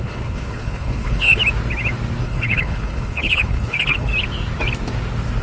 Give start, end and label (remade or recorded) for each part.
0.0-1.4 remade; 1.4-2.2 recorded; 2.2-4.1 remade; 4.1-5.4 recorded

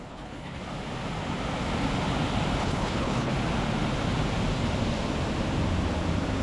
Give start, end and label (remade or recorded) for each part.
0.0-0.6 remade; 0.6-2.6 recorded; 2.6-3.3 remade; 3.3-6.4 recorded